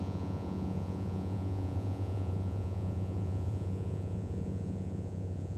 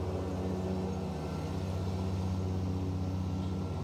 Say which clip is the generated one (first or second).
first